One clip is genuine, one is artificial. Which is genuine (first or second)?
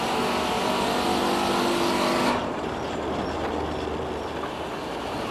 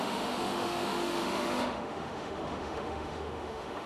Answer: first